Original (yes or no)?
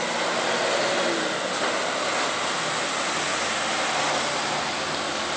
yes